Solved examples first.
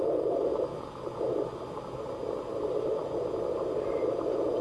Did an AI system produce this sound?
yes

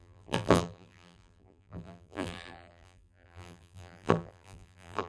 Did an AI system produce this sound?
yes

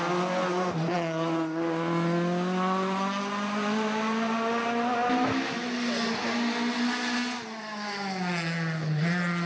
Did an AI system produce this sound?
no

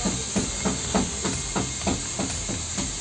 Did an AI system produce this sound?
no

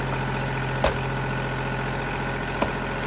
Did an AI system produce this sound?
no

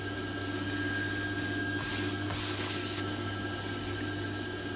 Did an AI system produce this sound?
no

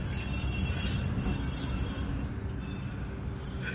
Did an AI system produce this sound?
no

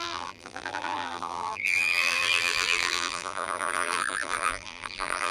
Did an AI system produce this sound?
yes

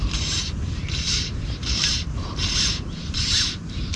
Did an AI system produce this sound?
yes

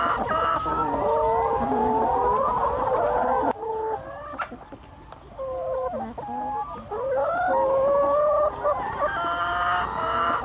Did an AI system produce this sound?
no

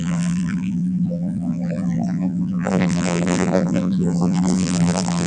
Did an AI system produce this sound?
yes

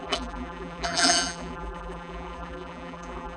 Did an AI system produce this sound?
yes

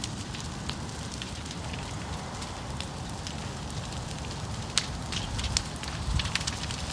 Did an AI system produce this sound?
yes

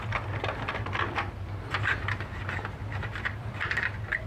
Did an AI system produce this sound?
no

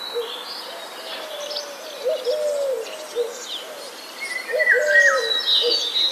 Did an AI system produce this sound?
no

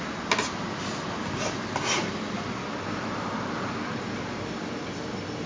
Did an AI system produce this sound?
no